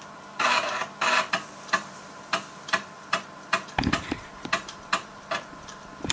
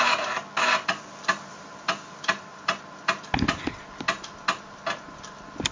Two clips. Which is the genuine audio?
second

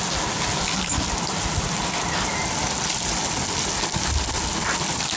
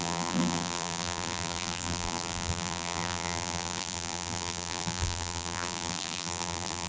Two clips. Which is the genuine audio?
first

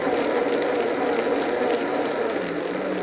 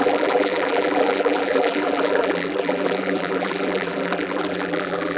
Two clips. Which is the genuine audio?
first